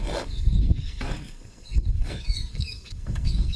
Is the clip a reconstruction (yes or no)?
yes